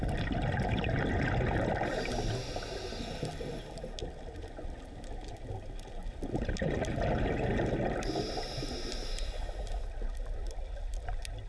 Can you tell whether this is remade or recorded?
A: recorded